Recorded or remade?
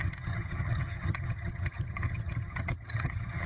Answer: remade